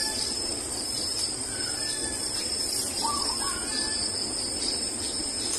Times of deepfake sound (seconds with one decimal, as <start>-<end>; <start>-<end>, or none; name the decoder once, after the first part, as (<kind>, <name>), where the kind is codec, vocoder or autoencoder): 0.0-5.6 (vocoder, BigVGAN v2)